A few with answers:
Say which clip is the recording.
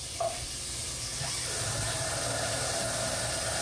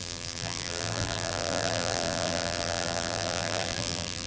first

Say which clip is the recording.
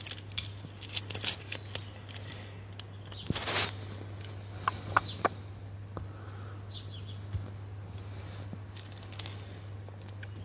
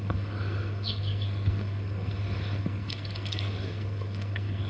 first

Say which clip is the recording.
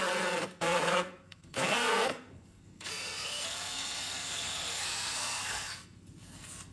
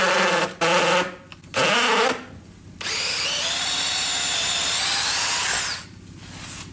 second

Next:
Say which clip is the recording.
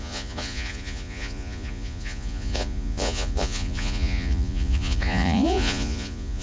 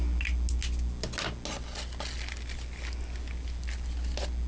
second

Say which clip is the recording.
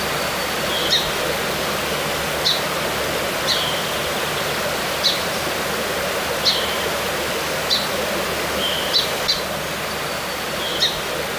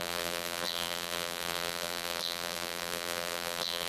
first